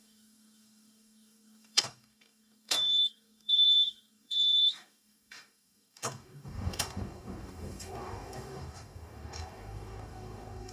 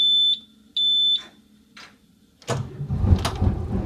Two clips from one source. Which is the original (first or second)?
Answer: second